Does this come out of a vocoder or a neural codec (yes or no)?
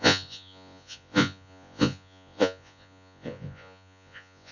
yes